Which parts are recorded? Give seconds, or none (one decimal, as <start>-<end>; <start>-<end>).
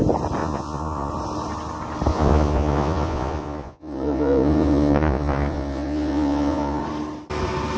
0.0-0.4; 1.1-2.1; 6.8-7.8